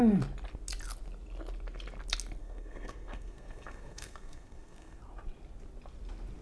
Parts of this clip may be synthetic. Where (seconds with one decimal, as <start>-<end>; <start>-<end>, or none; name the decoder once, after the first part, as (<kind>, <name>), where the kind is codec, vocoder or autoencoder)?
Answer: 2.4-5.0 (codec, SNAC)